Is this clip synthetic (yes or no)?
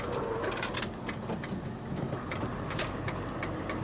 no